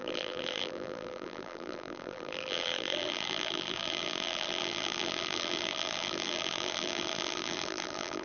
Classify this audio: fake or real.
fake